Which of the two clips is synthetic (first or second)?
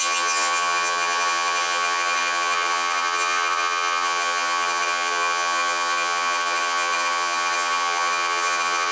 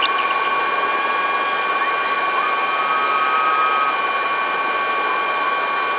first